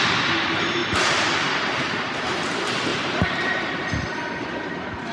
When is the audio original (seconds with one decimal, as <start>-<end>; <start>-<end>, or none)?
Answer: 0.0-0.8; 2.4-2.9; 3.7-5.1